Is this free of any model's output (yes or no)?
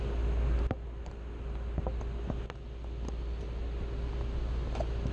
yes